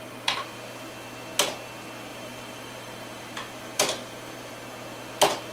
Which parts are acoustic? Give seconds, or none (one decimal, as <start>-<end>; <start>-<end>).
0.0-2.1; 4.5-5.5